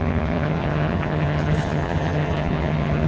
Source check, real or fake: fake